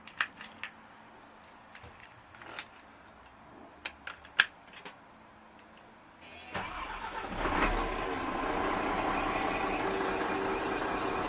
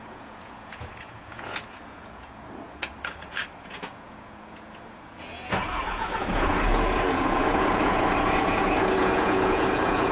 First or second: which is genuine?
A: first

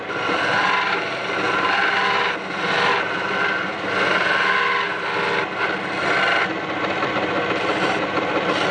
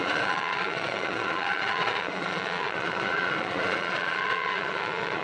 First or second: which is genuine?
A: first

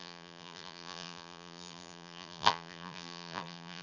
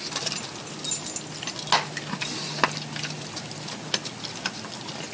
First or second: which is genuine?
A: second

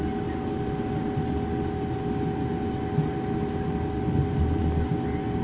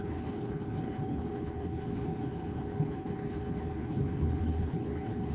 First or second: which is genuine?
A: first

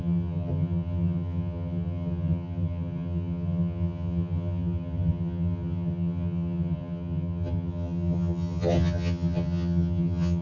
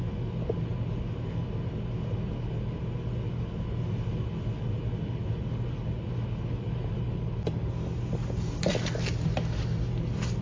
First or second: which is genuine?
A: second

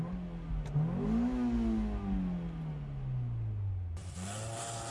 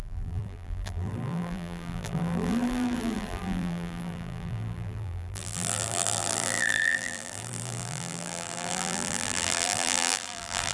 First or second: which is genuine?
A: first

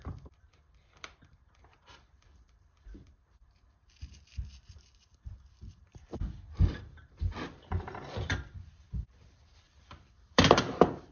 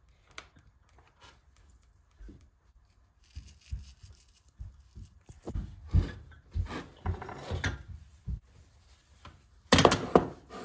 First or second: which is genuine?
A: second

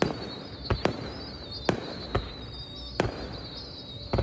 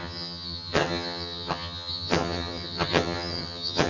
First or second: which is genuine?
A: first